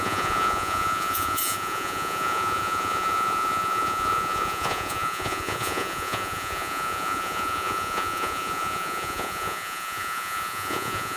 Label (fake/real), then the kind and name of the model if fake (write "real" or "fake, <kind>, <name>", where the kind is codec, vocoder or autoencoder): fake, vocoder, Vocos